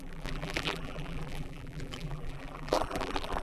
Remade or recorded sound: remade